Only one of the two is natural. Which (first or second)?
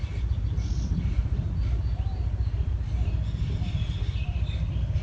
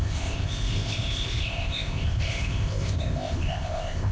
first